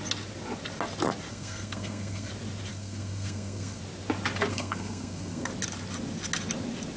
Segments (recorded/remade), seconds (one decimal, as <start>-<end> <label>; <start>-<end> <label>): 0.0-1.3 recorded; 1.3-2.3 remade; 2.3-2.7 recorded; 2.7-3.8 remade; 3.8-4.5 recorded; 4.5-5.5 remade; 5.5-7.0 recorded